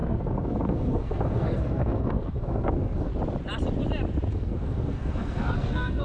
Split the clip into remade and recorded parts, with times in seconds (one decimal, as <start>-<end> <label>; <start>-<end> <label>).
0.0-3.1 remade; 3.1-4.3 recorded; 4.3-6.0 remade